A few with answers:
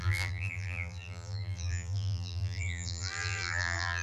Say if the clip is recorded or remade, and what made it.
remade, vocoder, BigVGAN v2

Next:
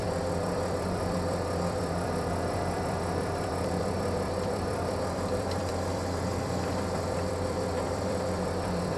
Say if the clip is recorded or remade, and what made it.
remade, vocoder, BigVGAN v2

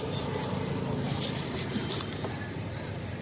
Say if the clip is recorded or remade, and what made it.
remade, vocoder, BigVGAN v2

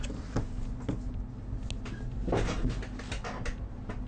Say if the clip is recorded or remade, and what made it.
recorded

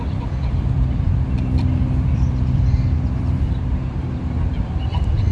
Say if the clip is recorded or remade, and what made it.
remade, vocoder, BigVGAN v2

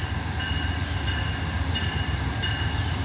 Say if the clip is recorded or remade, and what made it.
recorded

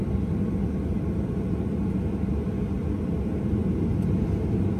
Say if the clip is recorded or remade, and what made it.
recorded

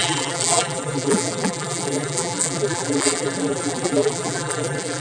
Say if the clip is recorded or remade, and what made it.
remade, vocoder, BigVGAN v2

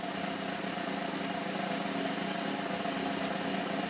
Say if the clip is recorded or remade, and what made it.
recorded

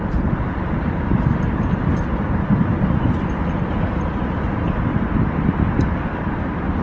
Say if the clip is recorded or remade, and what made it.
recorded